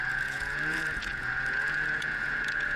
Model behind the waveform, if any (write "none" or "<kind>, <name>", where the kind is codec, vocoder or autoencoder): vocoder, Vocos